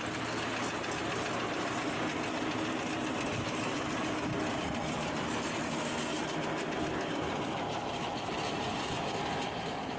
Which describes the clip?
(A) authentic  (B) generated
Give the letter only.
A